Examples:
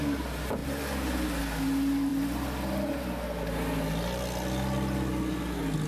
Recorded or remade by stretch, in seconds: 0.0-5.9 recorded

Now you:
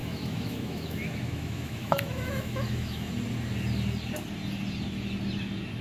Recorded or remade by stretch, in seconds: 0.0-3.1 remade; 3.1-5.8 recorded

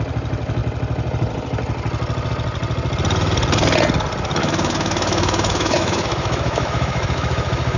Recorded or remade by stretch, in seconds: 0.0-4.4 recorded; 4.4-7.8 remade

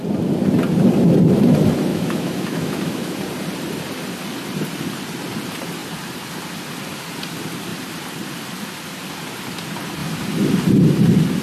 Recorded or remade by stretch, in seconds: 0.0-1.9 recorded; 1.9-3.2 remade; 3.2-11.4 recorded